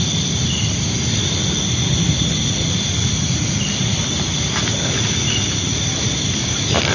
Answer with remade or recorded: remade